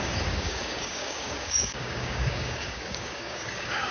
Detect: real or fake fake